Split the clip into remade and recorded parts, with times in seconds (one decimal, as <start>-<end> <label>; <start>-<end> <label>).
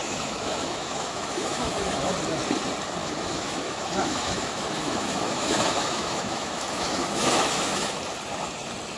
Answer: 0.0-2.1 remade; 2.1-3.0 recorded; 3.0-8.0 remade; 8.0-9.0 recorded